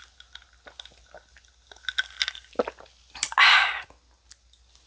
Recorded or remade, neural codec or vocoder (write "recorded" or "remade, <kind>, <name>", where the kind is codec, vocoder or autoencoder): recorded